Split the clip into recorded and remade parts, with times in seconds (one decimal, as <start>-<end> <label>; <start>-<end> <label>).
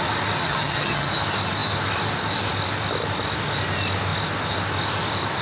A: 0.0-0.4 recorded; 0.4-1.1 remade; 1.1-5.4 recorded